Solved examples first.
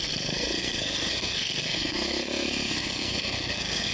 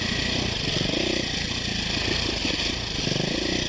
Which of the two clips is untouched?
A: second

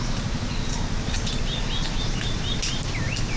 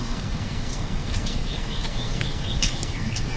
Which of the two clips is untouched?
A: first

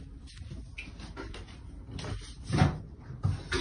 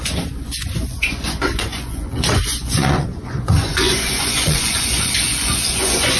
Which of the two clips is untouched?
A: first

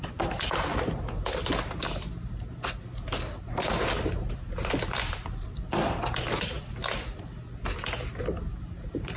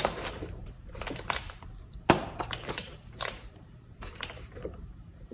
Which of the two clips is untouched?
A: first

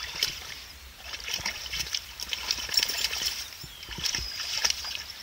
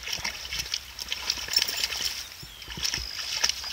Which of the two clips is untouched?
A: second